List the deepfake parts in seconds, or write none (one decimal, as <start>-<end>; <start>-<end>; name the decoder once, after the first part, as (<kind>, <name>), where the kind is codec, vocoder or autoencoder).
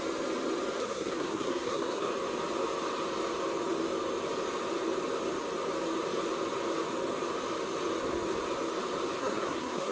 0.8-2.1 (codec, SNAC); 9.2-9.9